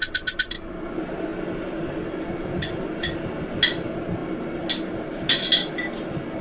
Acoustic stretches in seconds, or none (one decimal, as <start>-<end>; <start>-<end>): 0.0-6.4